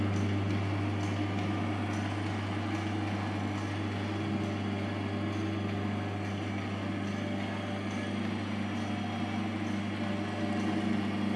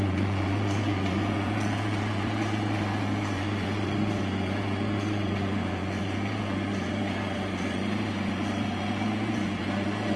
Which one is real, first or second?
first